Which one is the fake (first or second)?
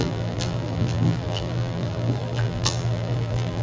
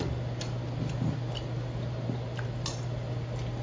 first